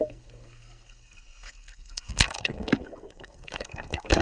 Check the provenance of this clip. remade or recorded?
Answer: remade